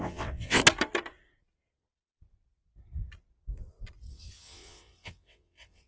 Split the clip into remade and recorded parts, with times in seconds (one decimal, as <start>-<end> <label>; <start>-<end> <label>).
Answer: 0.0-0.6 remade; 0.6-4.1 recorded; 4.1-5.9 remade